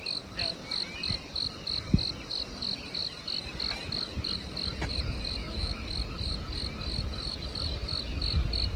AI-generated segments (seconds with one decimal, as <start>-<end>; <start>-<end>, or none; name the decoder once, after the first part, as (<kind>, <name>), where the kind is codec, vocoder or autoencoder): 5.4-5.9 (autoencoder, DAC-VAE)